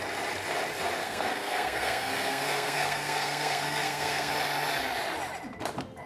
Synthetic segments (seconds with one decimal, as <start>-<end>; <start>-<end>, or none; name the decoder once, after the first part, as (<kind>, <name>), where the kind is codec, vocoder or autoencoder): 1.0-4.3 (codec, SNAC)